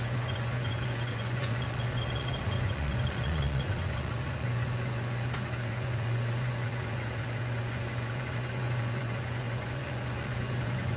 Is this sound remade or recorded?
remade